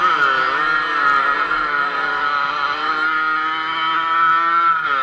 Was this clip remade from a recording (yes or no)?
no